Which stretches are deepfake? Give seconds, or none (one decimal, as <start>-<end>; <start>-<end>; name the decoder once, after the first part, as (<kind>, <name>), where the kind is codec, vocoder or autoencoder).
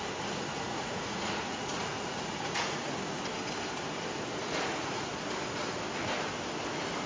0.5-3.0 (vocoder, Vocos); 4.4-5.1